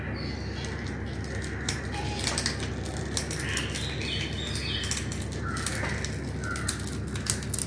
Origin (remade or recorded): recorded